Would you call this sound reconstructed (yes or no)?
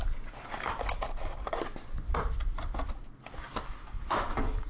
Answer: no